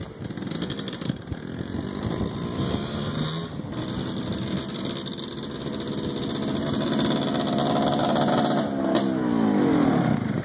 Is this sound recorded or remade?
recorded